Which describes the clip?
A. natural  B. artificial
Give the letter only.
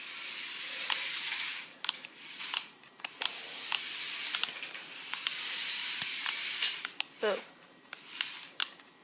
B